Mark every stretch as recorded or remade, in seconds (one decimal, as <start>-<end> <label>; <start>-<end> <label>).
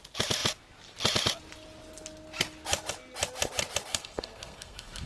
0.0-3.9 recorded; 3.9-5.1 remade